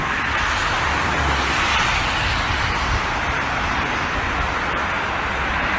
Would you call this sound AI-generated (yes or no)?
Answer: no